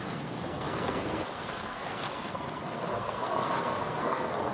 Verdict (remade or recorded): remade